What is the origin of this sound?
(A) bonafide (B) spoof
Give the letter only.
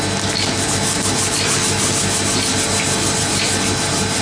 A